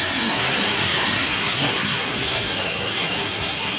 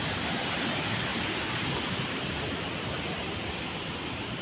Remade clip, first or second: first